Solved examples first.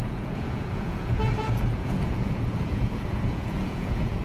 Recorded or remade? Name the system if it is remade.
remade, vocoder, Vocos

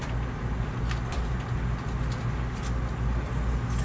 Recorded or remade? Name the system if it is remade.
recorded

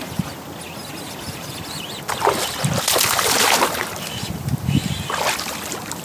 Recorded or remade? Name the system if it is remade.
recorded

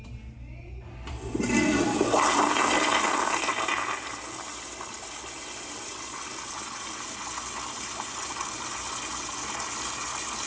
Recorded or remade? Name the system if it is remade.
recorded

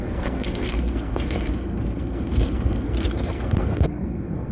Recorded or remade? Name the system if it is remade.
remade, codec, SNAC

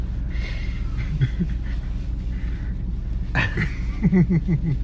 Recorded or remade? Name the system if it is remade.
recorded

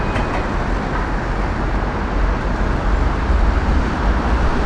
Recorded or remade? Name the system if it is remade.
recorded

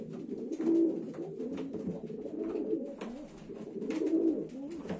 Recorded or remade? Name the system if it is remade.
recorded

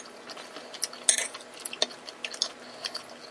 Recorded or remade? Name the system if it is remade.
recorded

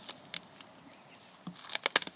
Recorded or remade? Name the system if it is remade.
recorded